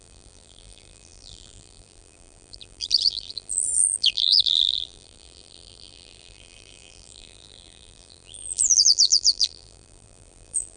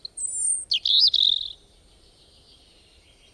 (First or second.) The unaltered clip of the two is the second